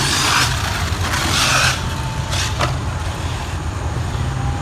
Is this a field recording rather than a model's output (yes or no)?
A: yes